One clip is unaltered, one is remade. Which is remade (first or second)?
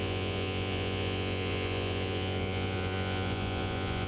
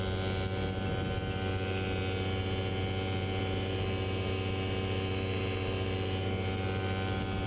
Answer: first